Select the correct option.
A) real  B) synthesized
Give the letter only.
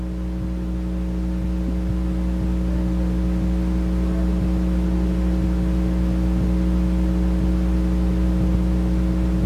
A